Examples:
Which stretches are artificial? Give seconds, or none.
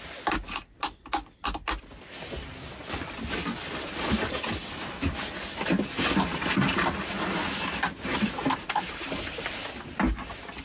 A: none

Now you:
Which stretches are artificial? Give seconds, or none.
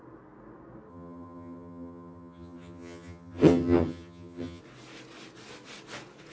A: 0.9-4.6 (vocoder, HiFi-GAN)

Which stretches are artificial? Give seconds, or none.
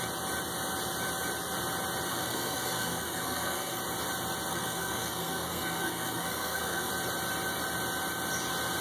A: 2.1-3.8 (codec, SNAC); 4.5-6.9